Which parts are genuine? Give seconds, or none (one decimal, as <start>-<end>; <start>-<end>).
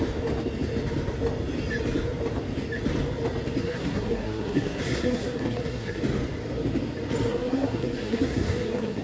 0.0-3.6; 6.0-7.3